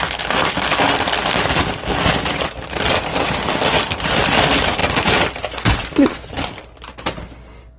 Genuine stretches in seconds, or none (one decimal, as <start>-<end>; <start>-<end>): 0.0-7.8